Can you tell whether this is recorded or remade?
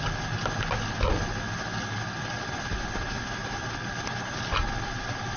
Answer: recorded